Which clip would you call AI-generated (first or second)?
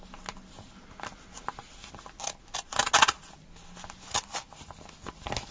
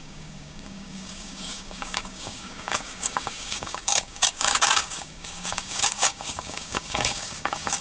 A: second